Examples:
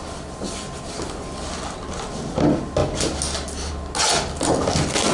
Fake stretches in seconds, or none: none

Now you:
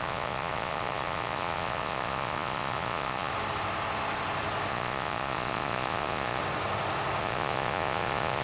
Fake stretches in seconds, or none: 0.0-3.3 (vocoder, Vocos); 4.7-6.4; 7.2-8.4

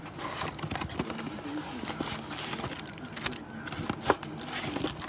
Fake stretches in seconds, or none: none

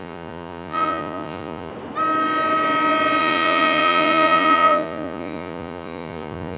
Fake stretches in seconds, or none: 0.0-1.7 (vocoder, Vocos); 3.2-6.6